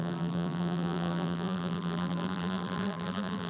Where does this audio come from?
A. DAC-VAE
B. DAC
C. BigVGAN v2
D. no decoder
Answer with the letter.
C